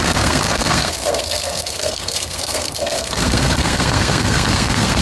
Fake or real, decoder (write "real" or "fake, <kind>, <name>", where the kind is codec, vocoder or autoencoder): fake, codec, SNAC